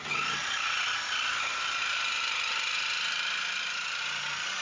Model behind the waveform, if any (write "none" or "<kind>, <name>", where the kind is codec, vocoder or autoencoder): none